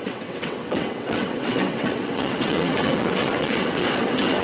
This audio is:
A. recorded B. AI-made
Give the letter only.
B